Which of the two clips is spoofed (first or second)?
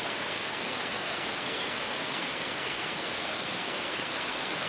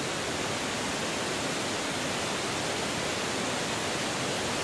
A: first